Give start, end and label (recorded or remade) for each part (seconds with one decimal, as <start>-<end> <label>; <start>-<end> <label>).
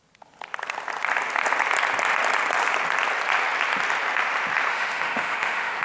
0.0-4.7 recorded; 4.7-5.8 remade